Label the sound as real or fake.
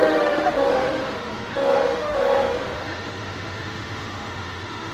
fake